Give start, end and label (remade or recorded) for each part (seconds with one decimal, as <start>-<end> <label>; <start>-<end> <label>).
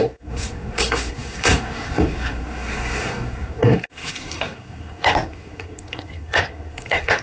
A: 0.0-7.2 remade